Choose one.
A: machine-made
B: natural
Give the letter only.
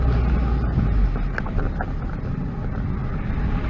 B